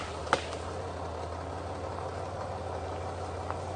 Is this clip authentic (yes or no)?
yes